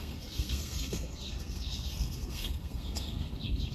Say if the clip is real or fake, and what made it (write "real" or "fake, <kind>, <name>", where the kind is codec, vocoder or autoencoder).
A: fake, codec, SNAC